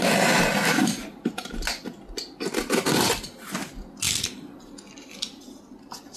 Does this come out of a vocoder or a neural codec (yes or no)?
no